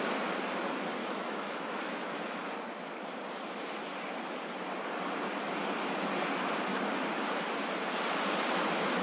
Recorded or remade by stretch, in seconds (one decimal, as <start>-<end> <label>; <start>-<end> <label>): 0.0-1.0 recorded; 1.0-2.4 remade; 2.4-9.0 recorded